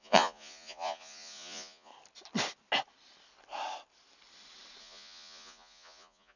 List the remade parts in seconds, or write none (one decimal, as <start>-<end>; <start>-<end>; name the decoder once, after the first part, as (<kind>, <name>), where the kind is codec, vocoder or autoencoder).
0.0-1.9 (vocoder, Vocos); 4.8-6.4